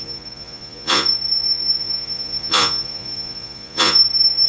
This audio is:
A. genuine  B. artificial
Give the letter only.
B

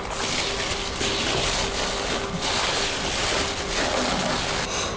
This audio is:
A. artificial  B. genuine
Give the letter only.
B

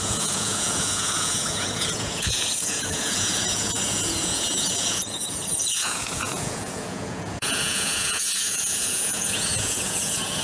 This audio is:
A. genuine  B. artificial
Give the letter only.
B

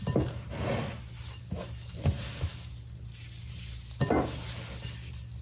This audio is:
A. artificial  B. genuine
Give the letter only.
B